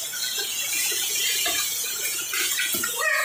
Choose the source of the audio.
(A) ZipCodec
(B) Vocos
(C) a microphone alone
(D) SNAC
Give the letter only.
B